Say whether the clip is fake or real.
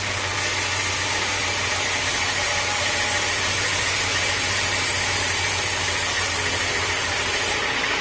real